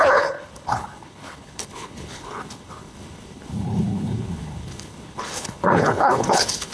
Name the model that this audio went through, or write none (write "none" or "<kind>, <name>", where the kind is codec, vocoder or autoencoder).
codec, HILCodec